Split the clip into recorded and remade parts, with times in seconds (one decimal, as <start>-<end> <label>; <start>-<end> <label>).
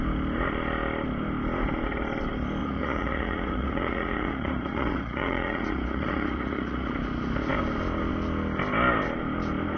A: 0.0-2.6 recorded; 2.6-6.9 remade; 6.9-9.8 recorded